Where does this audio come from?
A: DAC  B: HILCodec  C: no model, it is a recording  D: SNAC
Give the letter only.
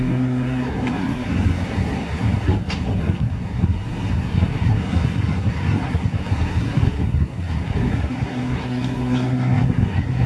D